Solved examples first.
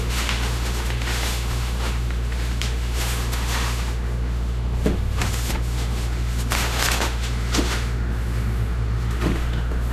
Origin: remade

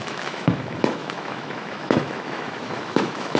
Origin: remade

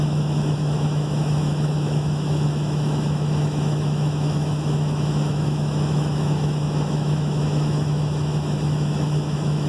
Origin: remade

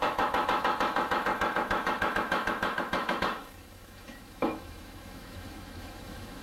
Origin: remade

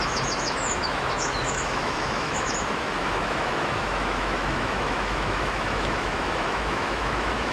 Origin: remade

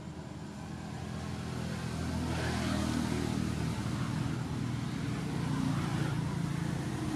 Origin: recorded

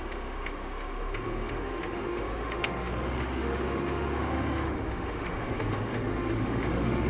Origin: remade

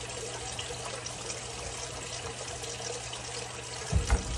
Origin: recorded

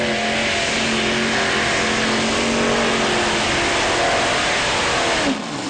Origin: recorded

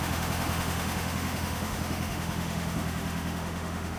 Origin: remade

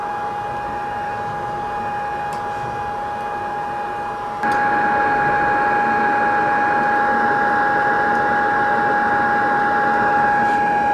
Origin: recorded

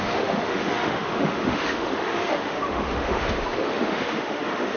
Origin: remade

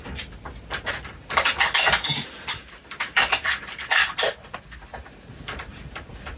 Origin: recorded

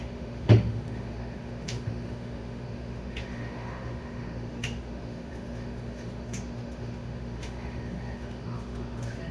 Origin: remade